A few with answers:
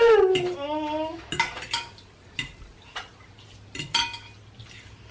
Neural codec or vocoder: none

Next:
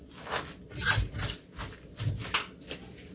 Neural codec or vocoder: none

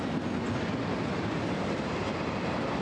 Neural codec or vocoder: none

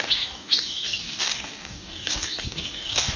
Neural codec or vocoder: codec, DAC